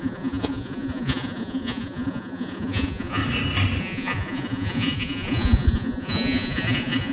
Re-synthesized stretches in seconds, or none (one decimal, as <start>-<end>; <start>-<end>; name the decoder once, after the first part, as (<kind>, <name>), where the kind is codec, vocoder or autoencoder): 0.0-3.2 (vocoder, Vocos); 3.8-7.1